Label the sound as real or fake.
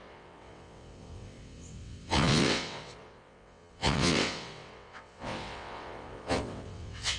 fake